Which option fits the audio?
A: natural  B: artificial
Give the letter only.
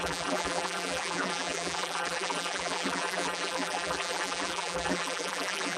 B